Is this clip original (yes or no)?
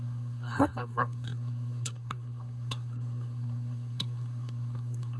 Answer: no